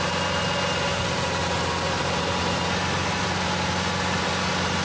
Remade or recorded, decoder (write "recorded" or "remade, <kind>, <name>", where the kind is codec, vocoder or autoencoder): recorded